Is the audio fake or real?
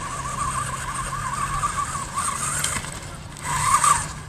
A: real